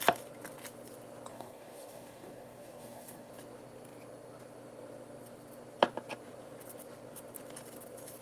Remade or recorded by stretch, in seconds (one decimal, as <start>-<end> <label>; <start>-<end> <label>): 0.0-1.3 recorded; 1.3-3.3 remade; 3.3-8.2 recorded